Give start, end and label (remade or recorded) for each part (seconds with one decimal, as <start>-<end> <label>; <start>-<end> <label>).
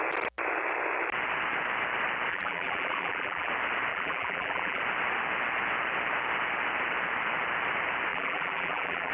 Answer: 0.0-2.3 recorded; 2.3-3.5 remade; 3.5-3.9 recorded; 3.9-4.8 remade; 4.8-8.1 recorded; 8.1-9.1 remade